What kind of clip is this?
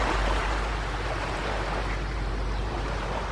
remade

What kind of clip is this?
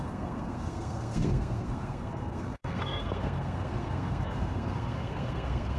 remade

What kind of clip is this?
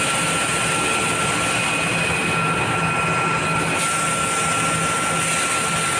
recorded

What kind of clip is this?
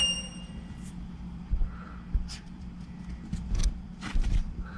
remade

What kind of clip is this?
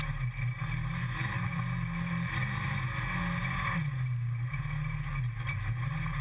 recorded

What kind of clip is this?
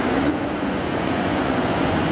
remade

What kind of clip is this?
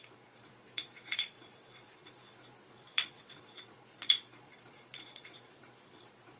remade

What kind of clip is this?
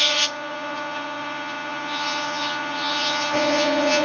remade